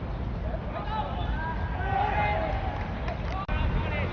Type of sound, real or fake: real